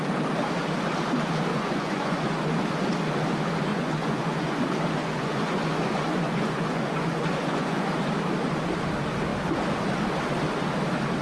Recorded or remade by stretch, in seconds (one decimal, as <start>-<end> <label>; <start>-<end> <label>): 0.0-1.5 recorded; 1.5-2.6 remade; 2.6-3.7 recorded; 3.7-4.6 remade; 4.6-5.0 recorded; 5.0-7.9 remade; 7.9-11.2 recorded